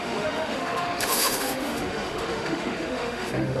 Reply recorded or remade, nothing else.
remade